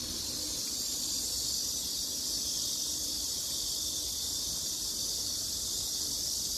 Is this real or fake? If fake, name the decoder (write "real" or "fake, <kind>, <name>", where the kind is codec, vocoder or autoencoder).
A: real